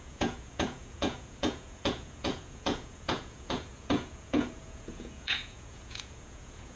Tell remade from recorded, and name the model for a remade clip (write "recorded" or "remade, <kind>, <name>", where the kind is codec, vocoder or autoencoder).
remade, vocoder, Vocos